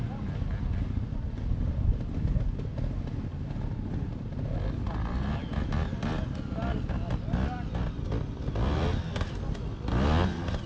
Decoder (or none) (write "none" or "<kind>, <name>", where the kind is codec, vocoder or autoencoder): none